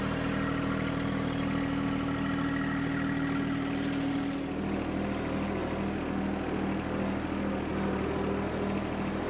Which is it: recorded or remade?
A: recorded